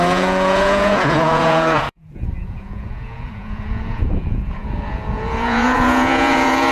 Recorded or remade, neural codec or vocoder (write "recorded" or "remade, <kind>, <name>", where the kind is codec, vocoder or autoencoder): remade, vocoder, Vocos